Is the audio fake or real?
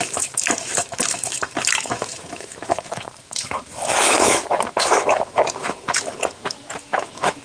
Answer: fake